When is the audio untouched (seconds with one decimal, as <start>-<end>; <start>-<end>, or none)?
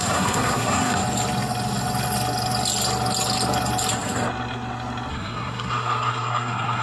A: 1.0-5.1